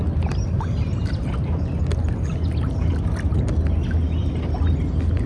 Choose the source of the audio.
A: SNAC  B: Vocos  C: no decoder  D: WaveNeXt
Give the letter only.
C